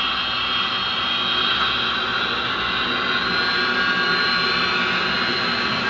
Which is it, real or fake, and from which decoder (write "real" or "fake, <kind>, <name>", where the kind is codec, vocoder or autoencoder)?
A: real